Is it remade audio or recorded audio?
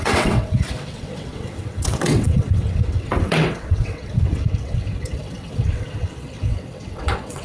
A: remade